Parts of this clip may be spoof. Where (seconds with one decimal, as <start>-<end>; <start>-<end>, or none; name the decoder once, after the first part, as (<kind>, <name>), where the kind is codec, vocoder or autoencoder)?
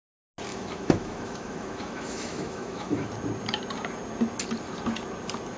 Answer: 0.5-3.1 (autoencoder, DAC-VAE)